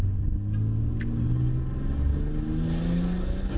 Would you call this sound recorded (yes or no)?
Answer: yes